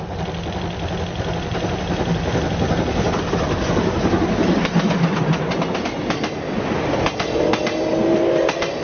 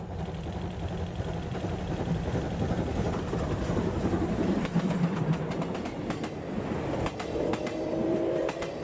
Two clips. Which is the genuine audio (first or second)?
first